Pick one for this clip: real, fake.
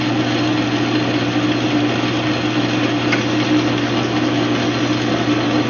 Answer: real